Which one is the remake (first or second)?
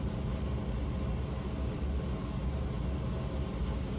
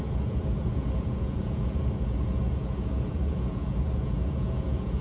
second